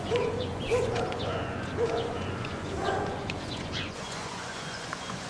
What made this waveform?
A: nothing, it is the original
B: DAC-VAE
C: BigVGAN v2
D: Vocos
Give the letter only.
D